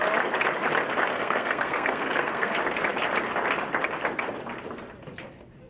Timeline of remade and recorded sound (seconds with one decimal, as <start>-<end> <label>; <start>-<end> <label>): 0.0-1.1 recorded; 1.1-2.5 remade; 2.5-5.7 recorded